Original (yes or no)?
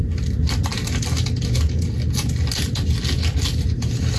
yes